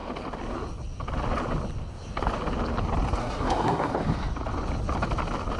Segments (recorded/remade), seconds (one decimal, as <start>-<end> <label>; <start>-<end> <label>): 0.0-3.2 recorded; 3.2-3.9 remade; 3.9-5.6 recorded